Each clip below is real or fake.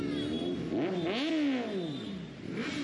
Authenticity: real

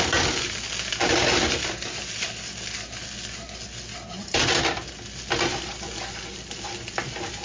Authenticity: real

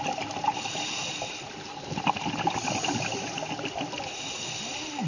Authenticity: real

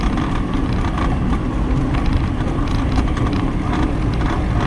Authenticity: real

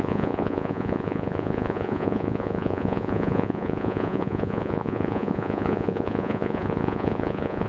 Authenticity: fake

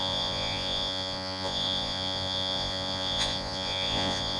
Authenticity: fake